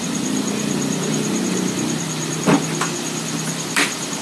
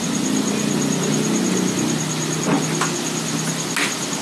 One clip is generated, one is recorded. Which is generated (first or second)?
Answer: first